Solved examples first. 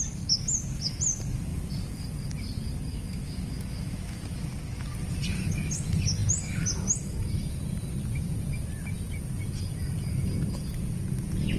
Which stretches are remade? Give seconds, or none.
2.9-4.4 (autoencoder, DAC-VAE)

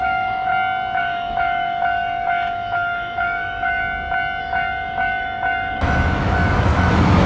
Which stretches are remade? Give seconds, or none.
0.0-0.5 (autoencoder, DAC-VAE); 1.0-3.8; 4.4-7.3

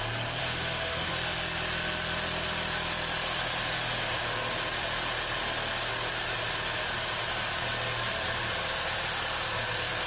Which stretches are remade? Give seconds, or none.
0.4-1.1 (autoencoder, DAC-VAE)

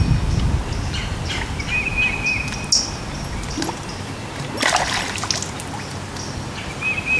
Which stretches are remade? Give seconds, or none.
none